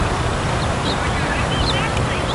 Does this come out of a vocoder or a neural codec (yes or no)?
yes